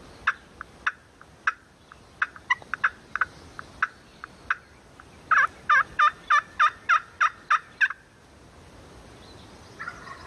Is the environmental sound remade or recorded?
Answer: recorded